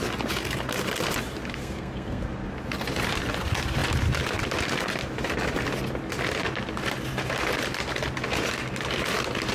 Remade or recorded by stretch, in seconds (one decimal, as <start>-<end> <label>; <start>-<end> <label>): 0.0-1.6 recorded; 1.6-2.2 remade; 2.2-9.5 recorded